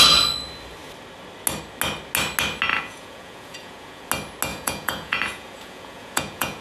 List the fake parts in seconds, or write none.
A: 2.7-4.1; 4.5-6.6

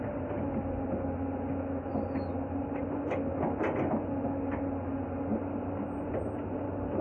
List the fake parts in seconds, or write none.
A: none

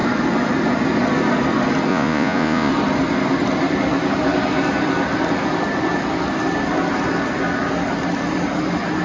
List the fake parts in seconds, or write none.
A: 1.9-2.7

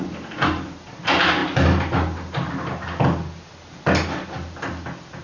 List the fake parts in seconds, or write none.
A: none

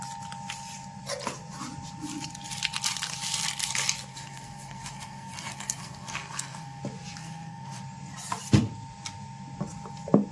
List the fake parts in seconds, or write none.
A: 4.1-6.8; 7.2-7.8

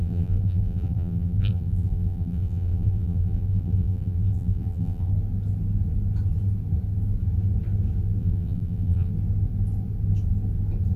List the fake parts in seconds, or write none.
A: 0.0-5.1; 8.2-9.1

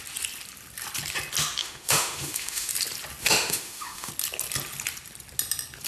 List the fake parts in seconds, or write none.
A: 1.6-2.7; 3.2-4.1